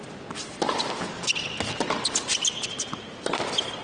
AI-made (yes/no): no